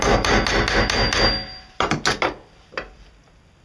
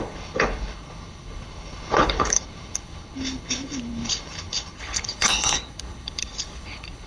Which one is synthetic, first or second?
second